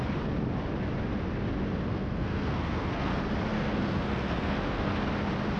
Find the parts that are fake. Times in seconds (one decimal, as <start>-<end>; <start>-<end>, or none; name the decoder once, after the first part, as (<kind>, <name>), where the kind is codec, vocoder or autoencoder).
1.9-3.1 (codec, SNAC); 3.5-4.9